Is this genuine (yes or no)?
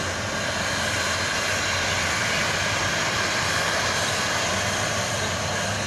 yes